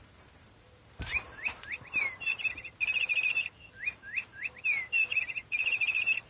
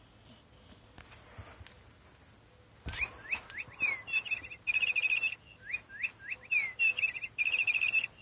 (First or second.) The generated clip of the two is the first